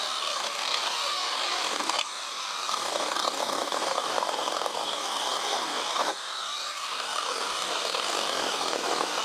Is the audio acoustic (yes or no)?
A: no